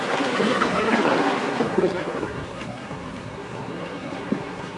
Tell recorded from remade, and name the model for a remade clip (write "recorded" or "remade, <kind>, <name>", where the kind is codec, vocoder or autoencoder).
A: remade, codec, SNAC